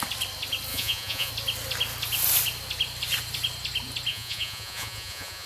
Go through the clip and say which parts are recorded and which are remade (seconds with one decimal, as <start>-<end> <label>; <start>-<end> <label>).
0.0-0.7 recorded; 0.7-1.3 remade; 1.3-4.1 recorded; 4.1-5.5 remade